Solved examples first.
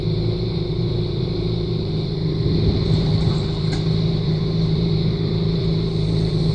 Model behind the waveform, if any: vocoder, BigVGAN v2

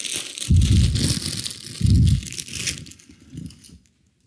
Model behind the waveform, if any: none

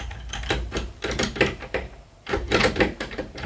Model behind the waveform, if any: vocoder, BigVGAN v2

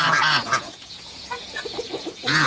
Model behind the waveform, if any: vocoder, Vocos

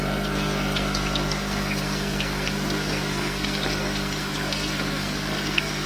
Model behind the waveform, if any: codec, SNAC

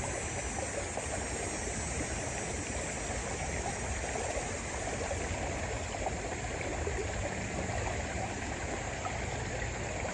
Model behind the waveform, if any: none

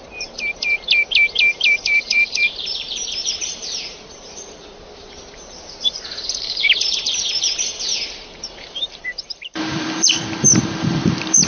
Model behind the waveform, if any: vocoder, BigVGAN v2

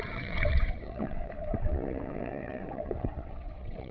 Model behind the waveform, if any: vocoder, WaveNeXt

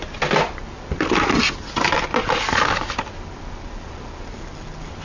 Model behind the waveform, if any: none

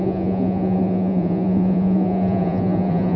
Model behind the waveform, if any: vocoder, Vocos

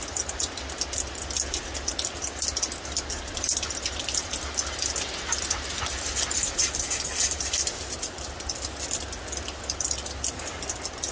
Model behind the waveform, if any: none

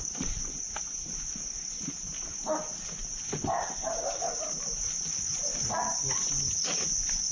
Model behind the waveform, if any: none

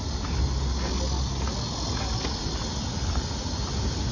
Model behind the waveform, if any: none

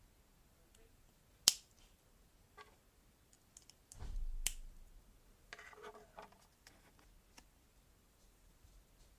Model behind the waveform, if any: none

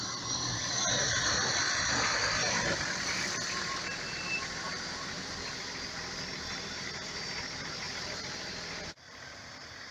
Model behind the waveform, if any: none